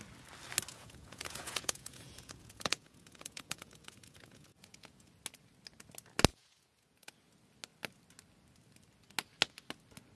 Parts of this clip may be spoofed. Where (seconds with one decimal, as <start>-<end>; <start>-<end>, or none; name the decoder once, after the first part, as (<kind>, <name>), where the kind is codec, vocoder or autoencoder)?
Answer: 0.7-5.1 (vocoder, Vocos); 6.3-7.1